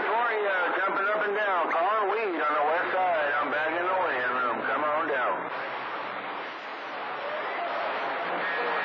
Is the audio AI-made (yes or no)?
no